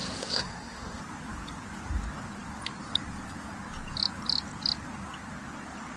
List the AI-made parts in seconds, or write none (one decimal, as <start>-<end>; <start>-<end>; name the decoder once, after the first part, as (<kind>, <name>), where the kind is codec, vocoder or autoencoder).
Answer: 0.0-1.0 (codec, SNAC)

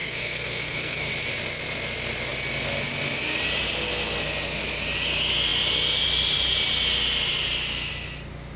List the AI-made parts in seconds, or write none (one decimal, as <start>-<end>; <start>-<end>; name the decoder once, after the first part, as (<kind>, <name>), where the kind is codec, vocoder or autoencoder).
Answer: 0.0-1.1 (codec, SNAC)

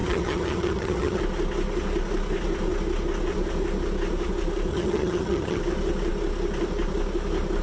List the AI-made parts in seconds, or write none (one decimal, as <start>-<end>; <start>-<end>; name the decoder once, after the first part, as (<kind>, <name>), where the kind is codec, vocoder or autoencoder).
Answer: 0.0-1.2 (vocoder, HiFi-GAN); 4.7-5.6

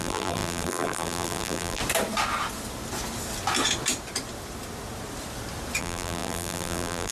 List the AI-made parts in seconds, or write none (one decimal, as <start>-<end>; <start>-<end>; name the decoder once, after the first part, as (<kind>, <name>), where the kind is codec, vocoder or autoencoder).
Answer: 0.0-1.8 (vocoder, BigVGAN v2); 5.8-7.1

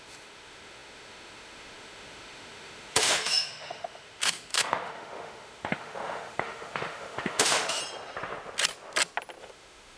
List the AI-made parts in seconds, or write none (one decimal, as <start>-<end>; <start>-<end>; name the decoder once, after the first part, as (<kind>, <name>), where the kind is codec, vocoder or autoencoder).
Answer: 0.0-7.8 (autoencoder, DAC-VAE); 9.4-10.0

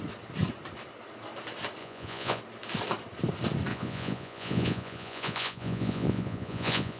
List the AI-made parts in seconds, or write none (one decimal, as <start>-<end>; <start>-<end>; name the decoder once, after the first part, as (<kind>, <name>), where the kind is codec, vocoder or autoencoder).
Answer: 1.8-2.4 (vocoder, Vocos); 3.7-7.0

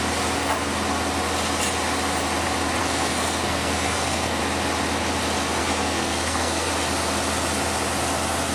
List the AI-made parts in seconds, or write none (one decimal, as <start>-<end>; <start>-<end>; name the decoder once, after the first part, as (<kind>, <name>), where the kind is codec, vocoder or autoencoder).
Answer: 2.8-4.4 (codec, SNAC); 5.6-6.7

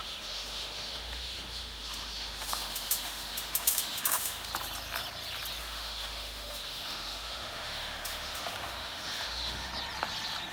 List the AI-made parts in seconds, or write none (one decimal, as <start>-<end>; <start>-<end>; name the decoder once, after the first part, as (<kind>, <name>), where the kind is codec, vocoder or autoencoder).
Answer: 0.0-4.5 (autoencoder, DAC-VAE); 5.6-9.7